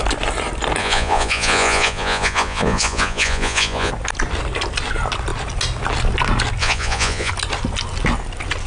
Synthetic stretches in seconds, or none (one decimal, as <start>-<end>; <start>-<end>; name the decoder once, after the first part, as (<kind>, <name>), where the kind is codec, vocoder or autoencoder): 0.8-3.9 (vocoder, Vocos); 6.6-7.3